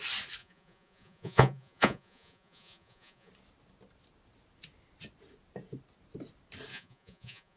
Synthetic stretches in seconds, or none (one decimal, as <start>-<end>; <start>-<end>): 0.4-3.3; 6.7-7.6